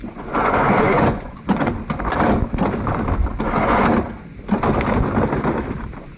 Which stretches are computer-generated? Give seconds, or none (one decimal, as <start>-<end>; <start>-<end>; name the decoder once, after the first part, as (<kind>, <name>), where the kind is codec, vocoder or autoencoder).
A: 0.0-1.7 (vocoder, Vocos); 3.3-3.8